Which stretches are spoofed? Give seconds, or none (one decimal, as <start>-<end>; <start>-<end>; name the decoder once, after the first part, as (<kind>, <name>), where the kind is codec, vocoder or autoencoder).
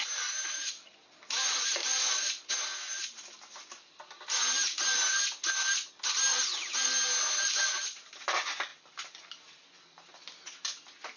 none